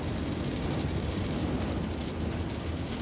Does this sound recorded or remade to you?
recorded